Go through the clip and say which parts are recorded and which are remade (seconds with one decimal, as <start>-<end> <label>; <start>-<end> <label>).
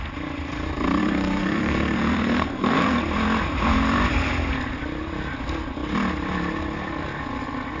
0.0-1.0 recorded; 1.0-3.0 remade; 3.0-7.8 recorded